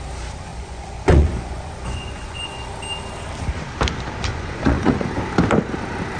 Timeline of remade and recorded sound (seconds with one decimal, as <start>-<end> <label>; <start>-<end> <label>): 0.0-0.5 recorded; 0.5-2.7 remade; 2.7-4.3 recorded; 4.3-5.2 remade; 5.2-6.2 recorded